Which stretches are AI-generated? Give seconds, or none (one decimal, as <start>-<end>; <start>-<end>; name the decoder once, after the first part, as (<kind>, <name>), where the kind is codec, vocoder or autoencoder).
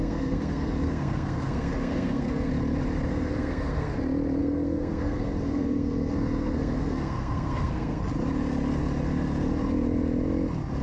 0.0-2.5 (codec, SNAC); 3.1-4.0; 4.4-8.0